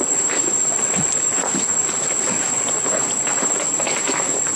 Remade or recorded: remade